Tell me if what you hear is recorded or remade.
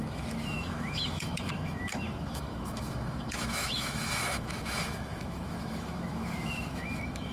remade